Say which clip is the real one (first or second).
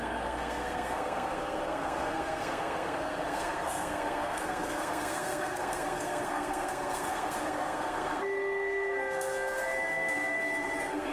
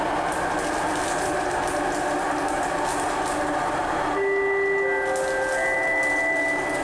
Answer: second